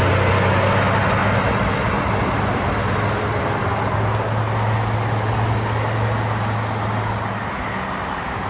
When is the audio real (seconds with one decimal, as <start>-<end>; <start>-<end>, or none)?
0.0-8.5